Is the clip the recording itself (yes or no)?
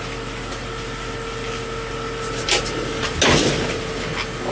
yes